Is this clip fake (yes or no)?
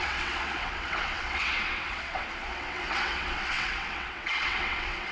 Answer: yes